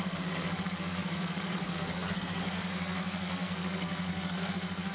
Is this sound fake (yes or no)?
yes